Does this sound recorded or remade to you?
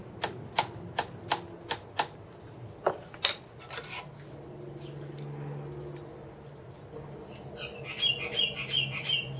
recorded